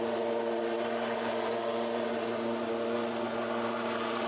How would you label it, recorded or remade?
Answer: recorded